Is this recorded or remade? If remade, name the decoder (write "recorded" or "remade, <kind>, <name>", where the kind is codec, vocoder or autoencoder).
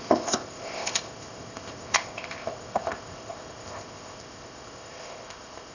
remade, codec, ZipCodec